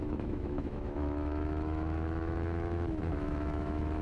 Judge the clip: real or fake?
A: fake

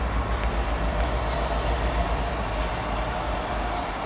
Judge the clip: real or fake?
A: real